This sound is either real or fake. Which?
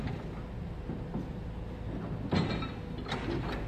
real